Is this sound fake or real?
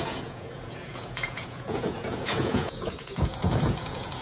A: fake